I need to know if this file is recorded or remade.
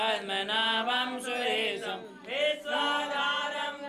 recorded